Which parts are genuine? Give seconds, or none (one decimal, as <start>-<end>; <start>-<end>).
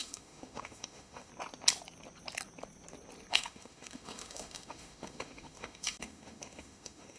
1.3-3.3